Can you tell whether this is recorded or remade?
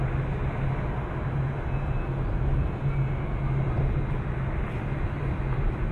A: recorded